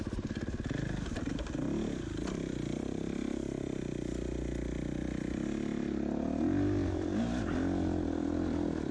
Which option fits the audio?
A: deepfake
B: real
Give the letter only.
B